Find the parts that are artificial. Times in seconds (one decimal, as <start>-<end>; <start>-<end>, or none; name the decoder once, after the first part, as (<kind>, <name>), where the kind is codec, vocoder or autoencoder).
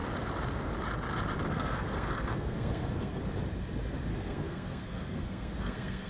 1.5-3.2 (codec, SNAC); 4.1-6.1